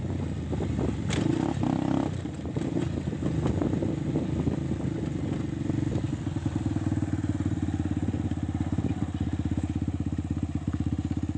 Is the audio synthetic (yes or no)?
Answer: no